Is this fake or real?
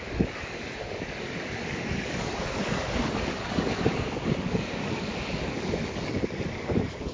fake